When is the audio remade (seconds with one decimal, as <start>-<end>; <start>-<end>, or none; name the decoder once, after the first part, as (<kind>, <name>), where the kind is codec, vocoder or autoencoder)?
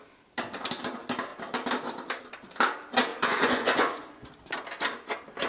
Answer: 3.1-4.3 (vocoder, Vocos)